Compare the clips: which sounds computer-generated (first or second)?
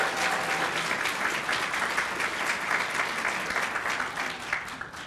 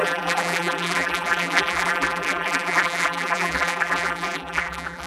second